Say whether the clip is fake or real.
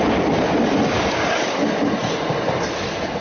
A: real